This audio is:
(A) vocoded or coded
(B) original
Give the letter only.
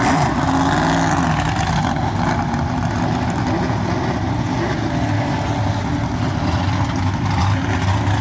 B